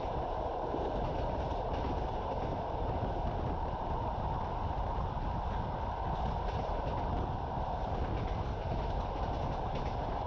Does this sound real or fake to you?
real